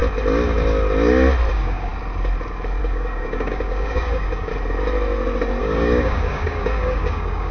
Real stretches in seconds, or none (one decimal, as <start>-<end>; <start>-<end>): 0.0-1.5; 1.9-2.8; 4.5-5.6